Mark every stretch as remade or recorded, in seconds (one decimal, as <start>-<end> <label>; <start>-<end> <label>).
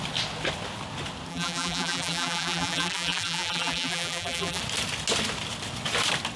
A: 0.0-1.3 recorded; 1.3-4.6 remade; 4.6-6.4 recorded